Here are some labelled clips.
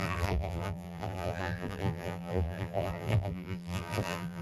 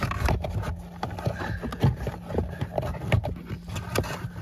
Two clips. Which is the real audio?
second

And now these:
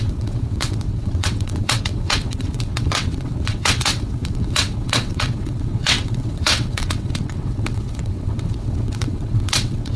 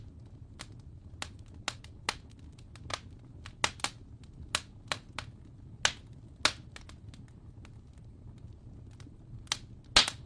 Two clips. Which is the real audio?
second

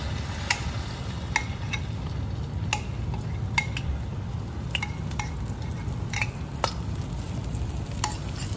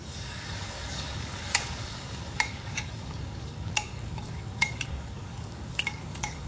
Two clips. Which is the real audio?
first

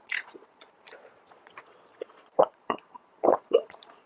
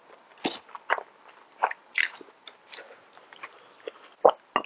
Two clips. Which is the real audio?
second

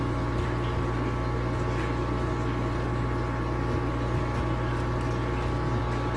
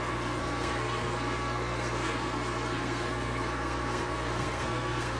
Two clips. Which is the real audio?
first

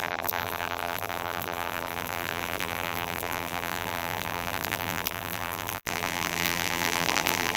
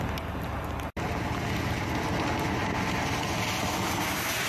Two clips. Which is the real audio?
second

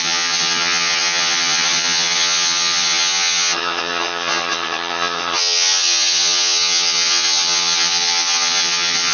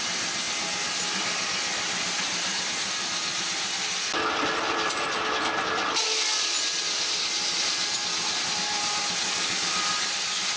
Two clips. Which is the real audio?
second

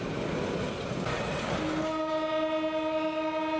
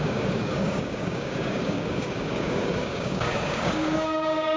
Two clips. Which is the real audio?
first